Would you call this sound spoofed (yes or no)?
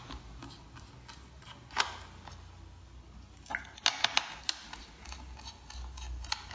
no